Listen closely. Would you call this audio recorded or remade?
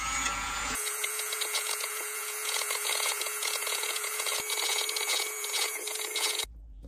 remade